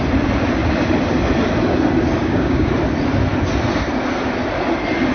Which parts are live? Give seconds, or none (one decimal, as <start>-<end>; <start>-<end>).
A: 0.0-2.2; 2.7-5.1